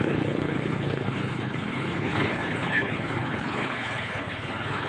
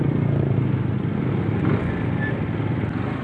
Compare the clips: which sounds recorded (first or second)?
second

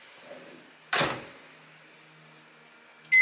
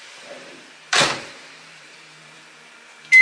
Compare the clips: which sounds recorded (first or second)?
first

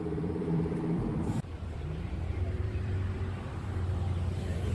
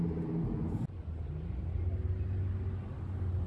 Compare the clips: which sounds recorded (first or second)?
second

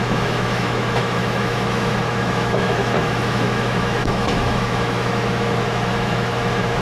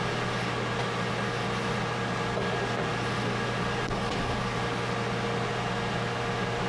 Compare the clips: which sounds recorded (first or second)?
second